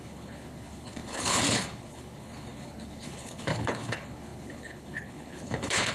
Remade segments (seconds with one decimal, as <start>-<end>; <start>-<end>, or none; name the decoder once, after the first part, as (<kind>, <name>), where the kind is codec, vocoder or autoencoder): 0.0-5.9 (codec, HILCodec)

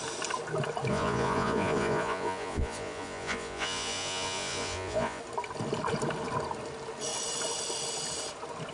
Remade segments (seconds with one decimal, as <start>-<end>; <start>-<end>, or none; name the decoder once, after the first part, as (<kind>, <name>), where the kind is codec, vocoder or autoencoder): 0.9-5.2 (vocoder, Vocos)

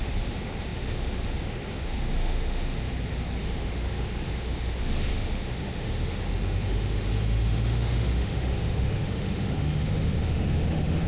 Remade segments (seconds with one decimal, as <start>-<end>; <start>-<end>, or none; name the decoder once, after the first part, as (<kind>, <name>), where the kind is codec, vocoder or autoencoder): 0.0-2.9 (autoencoder, DAC-VAE); 3.4-11.1

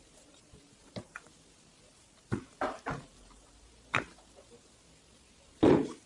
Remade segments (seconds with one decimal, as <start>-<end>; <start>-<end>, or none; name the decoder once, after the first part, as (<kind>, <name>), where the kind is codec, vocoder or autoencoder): 1.9-3.6 (vocoder, BigVGAN v2)